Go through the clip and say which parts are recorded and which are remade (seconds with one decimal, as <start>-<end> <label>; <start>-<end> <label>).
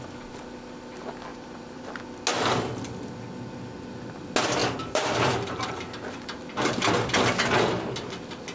0.0-1.3 recorded; 1.3-1.8 remade; 1.8-4.6 recorded; 4.6-5.7 remade; 5.7-8.5 recorded